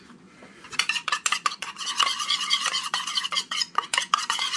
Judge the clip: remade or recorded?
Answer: remade